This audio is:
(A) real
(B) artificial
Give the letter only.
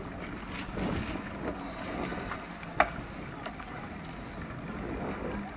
A